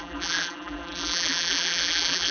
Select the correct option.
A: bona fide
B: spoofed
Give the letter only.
B